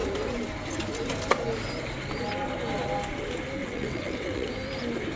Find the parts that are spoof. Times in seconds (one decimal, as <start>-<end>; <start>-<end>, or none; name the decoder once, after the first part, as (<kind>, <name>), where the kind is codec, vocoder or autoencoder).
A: 3.6-4.5 (vocoder, WaveNeXt)

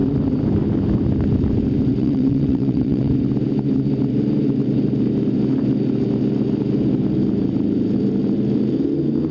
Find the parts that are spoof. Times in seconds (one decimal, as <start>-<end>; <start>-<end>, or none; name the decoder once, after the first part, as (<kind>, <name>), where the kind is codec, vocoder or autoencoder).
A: 2.0-3.1 (vocoder, WaveNeXt)

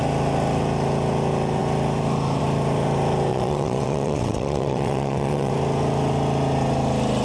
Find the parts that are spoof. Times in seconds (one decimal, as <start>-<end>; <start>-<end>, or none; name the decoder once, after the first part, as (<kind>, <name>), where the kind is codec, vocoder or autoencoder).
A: 3.3-5.5 (vocoder, WaveNeXt)

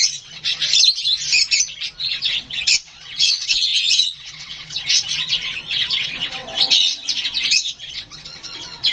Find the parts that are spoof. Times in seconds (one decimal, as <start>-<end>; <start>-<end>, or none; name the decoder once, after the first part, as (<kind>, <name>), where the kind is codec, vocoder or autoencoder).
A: 0.0-0.5 (vocoder, WaveNeXt); 2.0-8.9

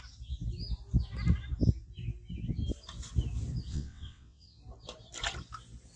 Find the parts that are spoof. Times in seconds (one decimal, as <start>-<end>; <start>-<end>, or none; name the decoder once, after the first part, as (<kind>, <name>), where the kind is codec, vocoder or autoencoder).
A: 3.7-4.6 (vocoder, WaveNeXt)

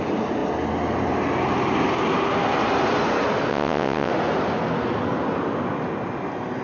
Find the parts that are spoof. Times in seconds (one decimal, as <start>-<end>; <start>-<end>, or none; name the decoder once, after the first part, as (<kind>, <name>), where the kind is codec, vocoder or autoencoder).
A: 3.5-4.1 (vocoder, WaveNeXt)

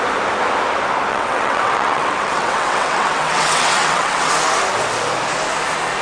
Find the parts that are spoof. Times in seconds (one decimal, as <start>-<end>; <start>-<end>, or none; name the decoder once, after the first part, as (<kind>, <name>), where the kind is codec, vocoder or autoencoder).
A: 1.1-4.3 (vocoder, WaveNeXt)